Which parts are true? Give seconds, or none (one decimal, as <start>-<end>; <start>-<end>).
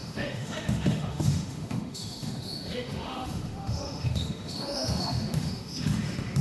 none